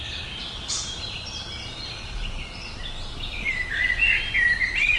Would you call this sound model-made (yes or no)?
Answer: no